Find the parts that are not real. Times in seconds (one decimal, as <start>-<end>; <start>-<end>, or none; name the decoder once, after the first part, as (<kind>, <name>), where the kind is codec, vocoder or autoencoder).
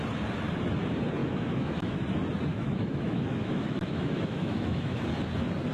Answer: 1.2-2.0 (autoencoder, DAC-VAE); 2.5-5.0